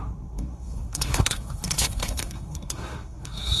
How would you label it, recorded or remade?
remade